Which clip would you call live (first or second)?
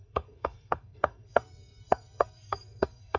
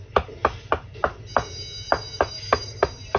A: second